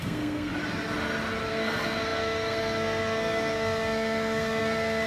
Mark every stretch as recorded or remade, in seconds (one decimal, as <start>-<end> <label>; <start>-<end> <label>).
0.0-0.5 remade; 0.5-1.5 recorded; 1.5-5.1 remade